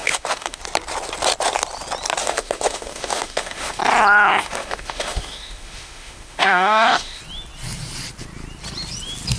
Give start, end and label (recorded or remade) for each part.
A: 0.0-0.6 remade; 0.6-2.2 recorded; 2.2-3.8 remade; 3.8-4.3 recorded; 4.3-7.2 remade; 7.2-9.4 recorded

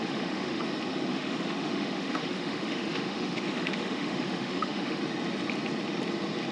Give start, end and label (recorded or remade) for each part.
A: 0.0-0.6 remade; 0.6-1.1 recorded; 1.1-5.0 remade; 5.0-6.5 recorded